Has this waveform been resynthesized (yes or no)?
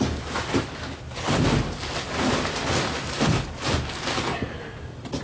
no